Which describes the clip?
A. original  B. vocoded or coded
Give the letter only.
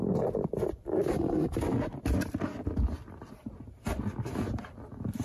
A